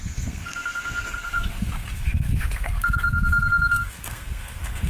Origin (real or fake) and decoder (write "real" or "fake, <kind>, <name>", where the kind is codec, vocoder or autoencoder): fake, codec, SNAC